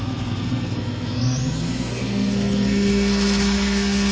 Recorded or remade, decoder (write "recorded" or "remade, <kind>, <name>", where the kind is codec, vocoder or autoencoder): remade, codec, SNAC